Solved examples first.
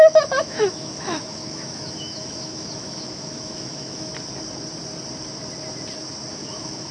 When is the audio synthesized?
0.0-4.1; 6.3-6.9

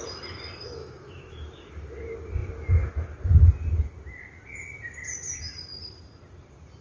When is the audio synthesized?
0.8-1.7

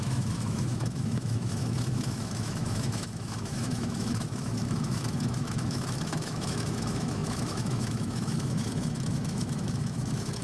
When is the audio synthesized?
0.0-10.4

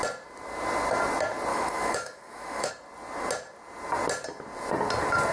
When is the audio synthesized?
1.5-2.7

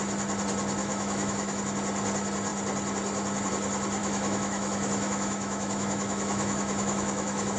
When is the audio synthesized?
0.8-1.6; 4.0-7.6

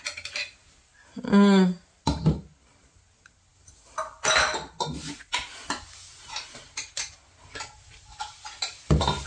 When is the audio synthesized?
none

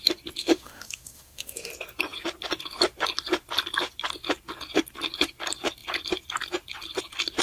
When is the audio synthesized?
0.4-1.7